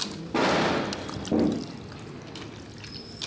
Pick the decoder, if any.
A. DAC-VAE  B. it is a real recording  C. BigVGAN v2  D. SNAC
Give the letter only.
B